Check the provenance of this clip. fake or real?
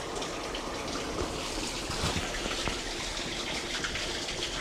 real